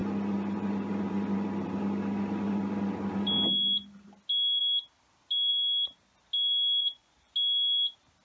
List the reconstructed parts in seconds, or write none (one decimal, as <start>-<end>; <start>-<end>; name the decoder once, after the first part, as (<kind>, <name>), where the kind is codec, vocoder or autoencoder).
6.8-7.3 (vocoder, Vocos)